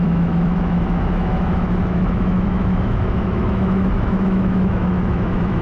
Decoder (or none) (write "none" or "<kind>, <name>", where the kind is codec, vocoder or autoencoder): autoencoder, DAC-VAE